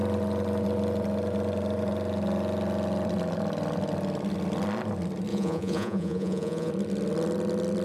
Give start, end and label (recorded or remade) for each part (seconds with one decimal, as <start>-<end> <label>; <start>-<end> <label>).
0.0-5.3 recorded; 5.3-6.7 remade; 6.7-7.8 recorded